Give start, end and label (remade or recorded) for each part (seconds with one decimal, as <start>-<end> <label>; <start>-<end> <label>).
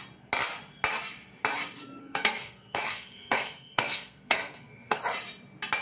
0.0-2.0 recorded; 2.0-5.0 remade; 5.0-5.8 recorded